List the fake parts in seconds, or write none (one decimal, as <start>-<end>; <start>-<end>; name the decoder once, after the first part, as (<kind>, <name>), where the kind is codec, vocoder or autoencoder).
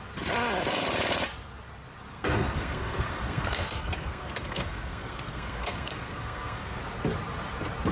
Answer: 2.1-6.8 (codec, SNAC)